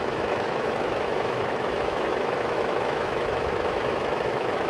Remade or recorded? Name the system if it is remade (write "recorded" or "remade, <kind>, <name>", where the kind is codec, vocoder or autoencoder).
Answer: remade, autoencoder, DAC-VAE